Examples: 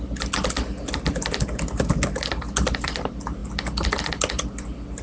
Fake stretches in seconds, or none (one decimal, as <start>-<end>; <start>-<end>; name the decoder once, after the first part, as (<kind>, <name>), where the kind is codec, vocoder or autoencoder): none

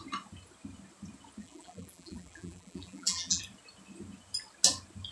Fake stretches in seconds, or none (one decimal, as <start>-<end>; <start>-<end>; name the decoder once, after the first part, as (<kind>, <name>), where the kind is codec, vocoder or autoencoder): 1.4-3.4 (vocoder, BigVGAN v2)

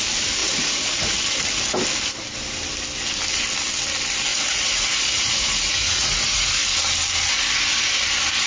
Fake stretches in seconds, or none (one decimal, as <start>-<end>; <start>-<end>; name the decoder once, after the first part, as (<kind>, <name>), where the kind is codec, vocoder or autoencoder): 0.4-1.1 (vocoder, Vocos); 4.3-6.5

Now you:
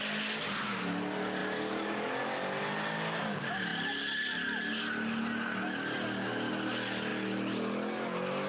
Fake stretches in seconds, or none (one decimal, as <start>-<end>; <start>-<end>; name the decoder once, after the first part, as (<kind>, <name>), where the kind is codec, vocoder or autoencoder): none

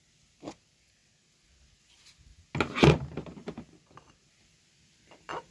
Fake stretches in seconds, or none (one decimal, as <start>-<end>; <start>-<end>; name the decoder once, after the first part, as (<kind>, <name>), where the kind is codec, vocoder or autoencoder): none

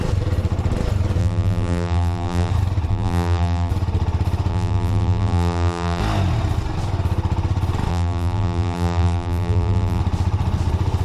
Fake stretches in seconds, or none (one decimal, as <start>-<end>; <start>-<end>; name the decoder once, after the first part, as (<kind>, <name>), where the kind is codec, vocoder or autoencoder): 1.2-2.5 (vocoder, BigVGAN v2); 2.9-3.7; 4.5-6.0; 7.9-10.0